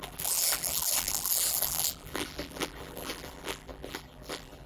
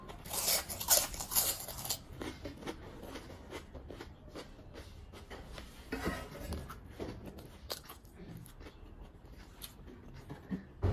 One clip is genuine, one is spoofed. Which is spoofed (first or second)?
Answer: first